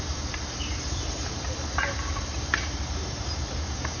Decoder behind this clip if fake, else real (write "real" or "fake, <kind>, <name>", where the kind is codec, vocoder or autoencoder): fake, vocoder, BigVGAN v2